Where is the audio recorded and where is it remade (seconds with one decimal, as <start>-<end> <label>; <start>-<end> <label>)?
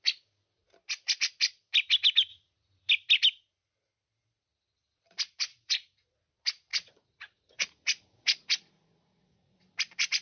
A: 0.0-2.3 recorded; 2.3-2.9 remade; 2.9-5.5 recorded; 5.5-6.3 remade; 6.3-6.7 recorded; 6.7-9.6 remade; 9.6-10.2 recorded